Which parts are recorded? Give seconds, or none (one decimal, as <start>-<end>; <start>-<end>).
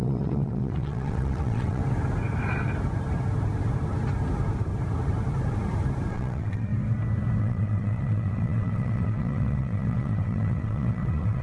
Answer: 1.8-6.1; 6.7-7.4